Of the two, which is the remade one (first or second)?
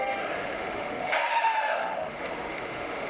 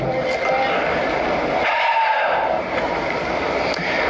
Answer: first